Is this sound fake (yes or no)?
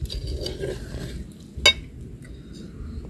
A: no